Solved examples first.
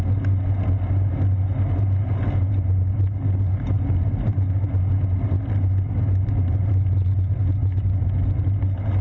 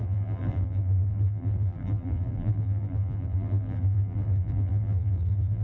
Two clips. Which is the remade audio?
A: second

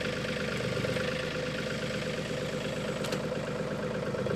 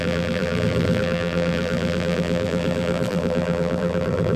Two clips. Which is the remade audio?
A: second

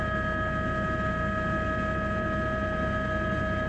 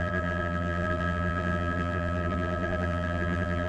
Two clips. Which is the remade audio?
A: second